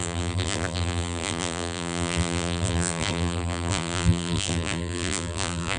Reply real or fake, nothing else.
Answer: fake